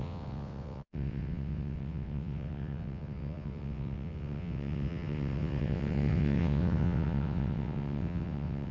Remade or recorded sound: remade